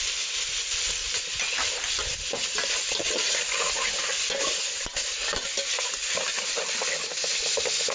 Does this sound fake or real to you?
real